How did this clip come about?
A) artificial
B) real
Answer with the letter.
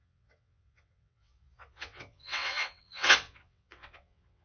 A